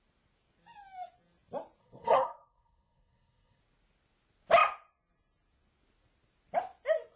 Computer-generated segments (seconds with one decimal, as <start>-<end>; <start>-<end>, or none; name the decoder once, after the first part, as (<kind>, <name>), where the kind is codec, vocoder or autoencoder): 1.8-3.6 (codec, SNAC)